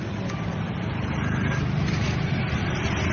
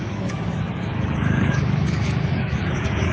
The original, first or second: first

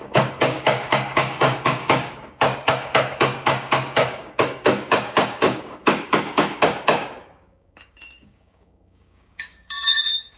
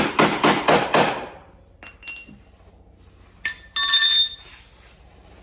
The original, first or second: second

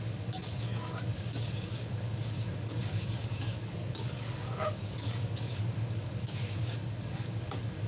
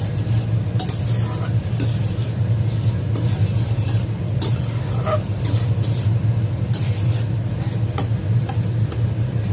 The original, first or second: second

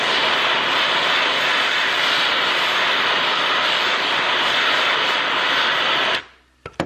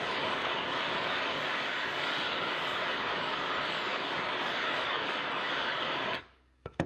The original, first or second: first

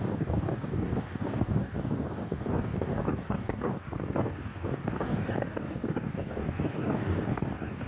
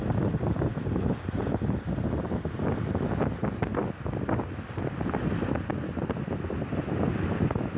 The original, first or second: second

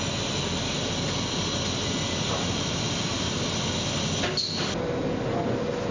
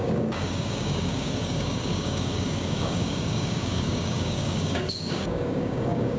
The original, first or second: first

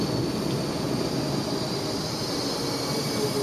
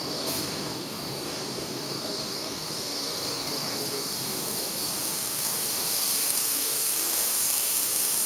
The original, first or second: first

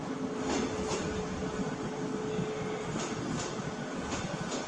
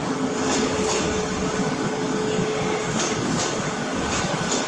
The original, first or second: first